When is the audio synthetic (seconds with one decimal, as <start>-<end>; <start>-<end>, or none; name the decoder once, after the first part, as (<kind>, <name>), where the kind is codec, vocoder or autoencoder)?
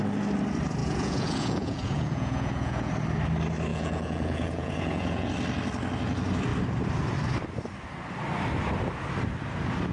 0.8-2.9 (vocoder, Vocos); 3.7-5.3